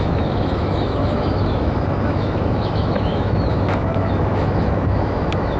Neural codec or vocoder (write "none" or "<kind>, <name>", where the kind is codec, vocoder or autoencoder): autoencoder, DAC-VAE